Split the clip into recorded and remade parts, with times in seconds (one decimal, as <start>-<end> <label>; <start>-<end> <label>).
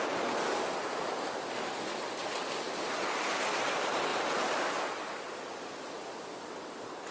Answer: 0.0-7.1 recorded